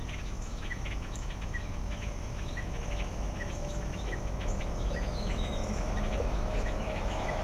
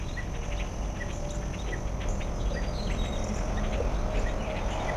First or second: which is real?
second